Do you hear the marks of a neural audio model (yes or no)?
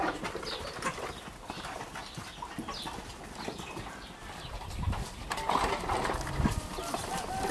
no